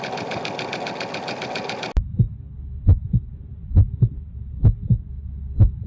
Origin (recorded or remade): recorded